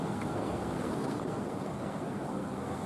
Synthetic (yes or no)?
yes